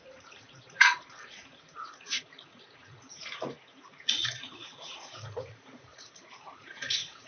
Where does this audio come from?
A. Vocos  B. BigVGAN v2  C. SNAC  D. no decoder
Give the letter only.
A